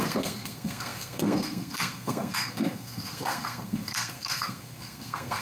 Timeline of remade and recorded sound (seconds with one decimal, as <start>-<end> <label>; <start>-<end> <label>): 0.0-5.4 remade